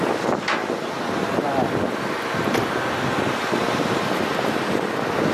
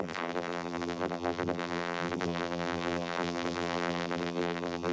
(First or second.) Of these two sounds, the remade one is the second